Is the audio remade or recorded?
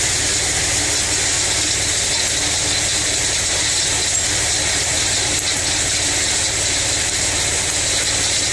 recorded